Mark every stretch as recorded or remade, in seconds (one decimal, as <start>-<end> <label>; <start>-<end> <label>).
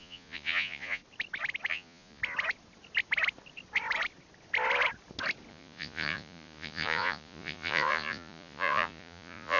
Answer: 0.0-1.0 remade; 1.0-1.7 recorded; 1.7-2.2 remade; 2.2-5.5 recorded; 5.5-9.6 remade